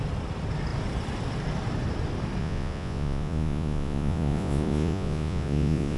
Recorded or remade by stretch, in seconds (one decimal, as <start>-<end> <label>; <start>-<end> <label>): 0.0-2.4 recorded; 2.4-6.0 remade